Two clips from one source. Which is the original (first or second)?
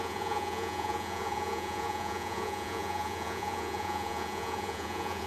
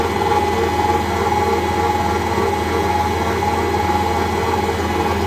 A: second